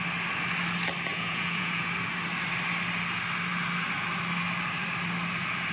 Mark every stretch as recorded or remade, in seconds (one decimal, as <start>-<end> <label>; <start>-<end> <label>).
0.0-1.1 recorded; 1.1-1.9 remade; 1.9-5.7 recorded